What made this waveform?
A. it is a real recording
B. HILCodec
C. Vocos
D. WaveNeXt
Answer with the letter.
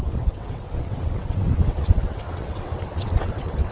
D